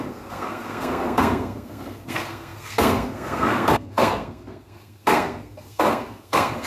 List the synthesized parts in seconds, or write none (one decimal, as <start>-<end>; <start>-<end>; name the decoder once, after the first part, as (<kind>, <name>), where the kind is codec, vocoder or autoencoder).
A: 0.0-6.7 (codec, SNAC)